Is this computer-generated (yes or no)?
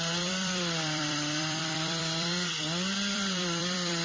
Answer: yes